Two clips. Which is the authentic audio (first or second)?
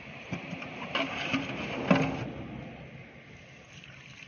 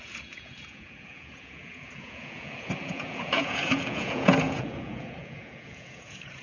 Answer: first